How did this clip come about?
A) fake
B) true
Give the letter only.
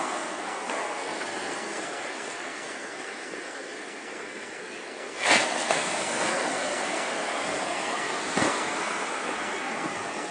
A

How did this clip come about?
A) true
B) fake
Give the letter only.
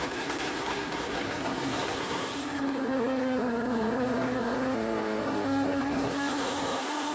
B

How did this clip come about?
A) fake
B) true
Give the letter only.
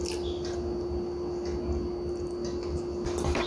B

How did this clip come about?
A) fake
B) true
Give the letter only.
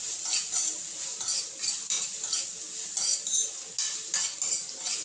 B